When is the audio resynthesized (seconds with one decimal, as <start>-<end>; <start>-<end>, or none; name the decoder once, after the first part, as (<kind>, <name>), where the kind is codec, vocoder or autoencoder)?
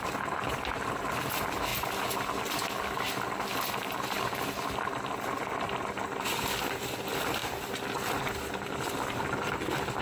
0.0-1.7 (vocoder, BigVGAN v2); 4.2-10.0